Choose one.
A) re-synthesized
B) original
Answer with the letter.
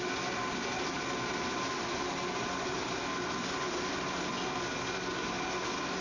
B